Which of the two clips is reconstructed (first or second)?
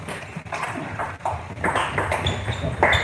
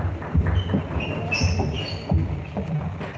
first